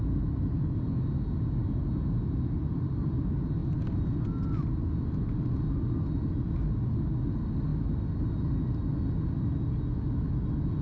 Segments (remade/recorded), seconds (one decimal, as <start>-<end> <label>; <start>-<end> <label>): 0.0-10.8 recorded

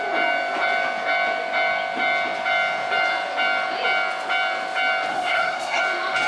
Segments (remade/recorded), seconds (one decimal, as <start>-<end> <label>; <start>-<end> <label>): 0.0-5.1 recorded; 5.1-5.8 remade; 5.8-6.3 recorded